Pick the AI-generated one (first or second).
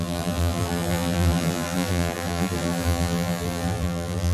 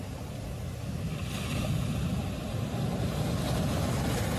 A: first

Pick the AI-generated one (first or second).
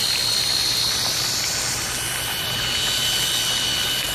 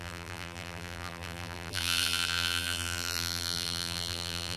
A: second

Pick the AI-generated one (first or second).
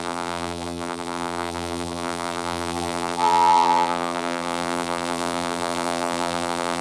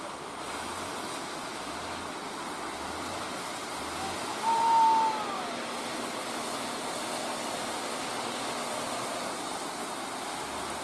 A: first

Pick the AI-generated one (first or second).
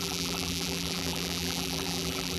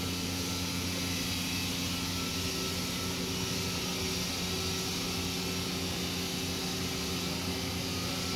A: first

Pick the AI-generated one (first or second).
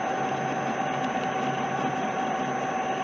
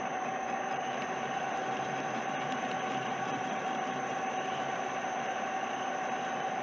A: second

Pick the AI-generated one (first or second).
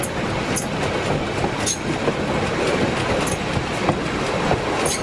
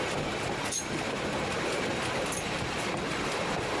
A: second